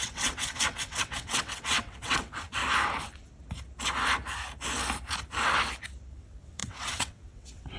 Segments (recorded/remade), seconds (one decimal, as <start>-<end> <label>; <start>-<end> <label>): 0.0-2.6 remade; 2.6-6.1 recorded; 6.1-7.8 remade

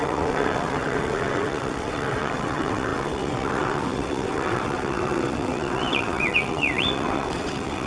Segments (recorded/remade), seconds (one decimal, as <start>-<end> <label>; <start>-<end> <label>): 0.0-7.9 remade

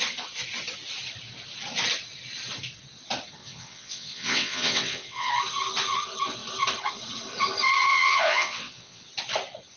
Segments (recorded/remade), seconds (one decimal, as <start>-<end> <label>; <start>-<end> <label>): 0.0-3.4 recorded; 3.4-5.3 remade; 5.3-7.9 recorded; 7.9-9.0 remade; 9.0-9.8 recorded

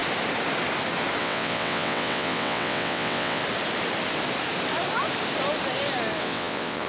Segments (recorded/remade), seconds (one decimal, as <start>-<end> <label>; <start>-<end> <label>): 0.0-1.2 recorded; 1.2-3.4 remade; 3.4-6.2 recorded; 6.2-6.9 remade

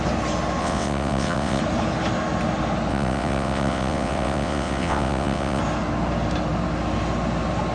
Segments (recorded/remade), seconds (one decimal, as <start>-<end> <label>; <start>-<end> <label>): 0.0-0.6 recorded; 0.6-1.6 remade; 1.6-2.9 recorded; 2.9-5.6 remade; 5.6-7.7 recorded

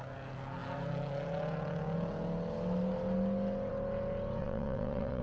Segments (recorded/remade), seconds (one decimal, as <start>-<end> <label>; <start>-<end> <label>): 0.0-4.4 recorded; 4.4-5.2 remade